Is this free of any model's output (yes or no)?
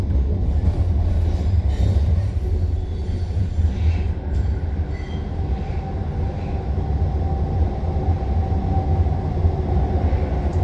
yes